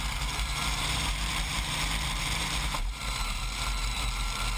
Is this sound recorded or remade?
remade